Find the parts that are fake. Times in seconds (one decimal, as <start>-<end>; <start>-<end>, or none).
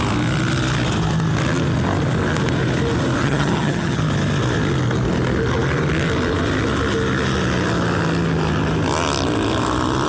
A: 3.2-4.0